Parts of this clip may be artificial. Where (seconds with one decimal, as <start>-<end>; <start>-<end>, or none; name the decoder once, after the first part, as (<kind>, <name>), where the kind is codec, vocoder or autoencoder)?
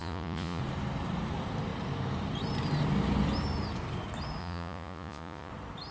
0.0-0.6 (vocoder, Vocos); 4.4-5.5